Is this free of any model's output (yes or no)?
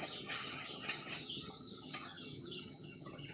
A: no